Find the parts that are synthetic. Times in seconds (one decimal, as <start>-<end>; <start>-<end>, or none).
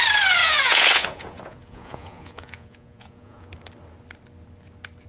0.4-3.5